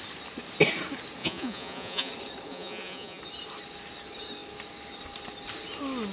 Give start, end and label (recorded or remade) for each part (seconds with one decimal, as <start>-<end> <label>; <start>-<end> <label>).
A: 0.0-1.2 recorded; 1.2-2.1 remade; 2.1-2.5 recorded; 2.5-3.2 remade; 3.2-6.1 recorded